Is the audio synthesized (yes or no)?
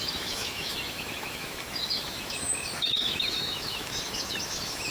yes